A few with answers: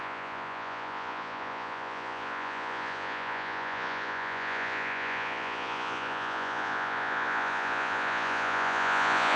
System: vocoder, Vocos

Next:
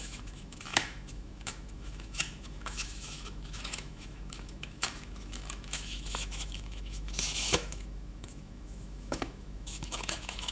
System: autoencoder, DAC-VAE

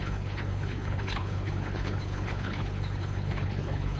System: codec, HILCodec